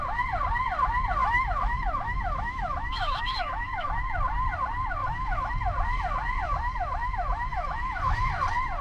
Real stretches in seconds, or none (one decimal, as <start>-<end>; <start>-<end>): 0.0-1.2; 3.9-5.0; 5.5-7.5; 8.3-8.8